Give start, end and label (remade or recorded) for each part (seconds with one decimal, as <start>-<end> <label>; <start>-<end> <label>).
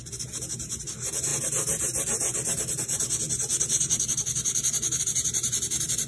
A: 0.0-6.1 recorded